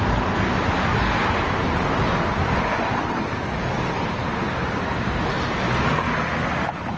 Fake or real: real